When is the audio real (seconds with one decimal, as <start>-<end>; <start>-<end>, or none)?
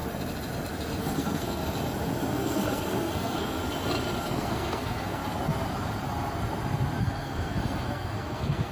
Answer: 0.0-1.0; 1.6-2.3; 3.6-4.2; 5.2-7.0